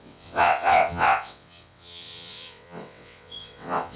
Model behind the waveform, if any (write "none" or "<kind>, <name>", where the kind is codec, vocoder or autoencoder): vocoder, WaveNeXt